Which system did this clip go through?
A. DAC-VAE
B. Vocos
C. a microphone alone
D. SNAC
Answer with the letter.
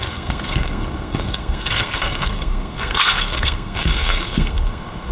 D